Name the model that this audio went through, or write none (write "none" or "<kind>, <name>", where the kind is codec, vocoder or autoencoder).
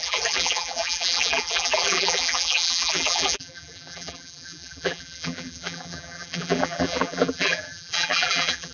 vocoder, BigVGAN v2